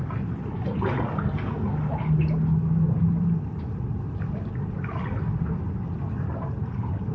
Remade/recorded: recorded